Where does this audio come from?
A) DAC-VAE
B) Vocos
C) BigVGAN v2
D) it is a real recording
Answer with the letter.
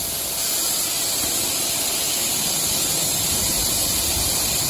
D